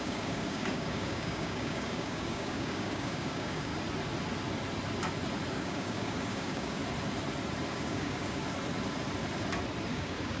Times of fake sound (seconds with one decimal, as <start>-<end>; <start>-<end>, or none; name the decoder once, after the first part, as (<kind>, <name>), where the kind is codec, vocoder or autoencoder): 0.0-3.7 (codec, DAC); 5.5-6.8; 7.7-8.4; 9.9-10.4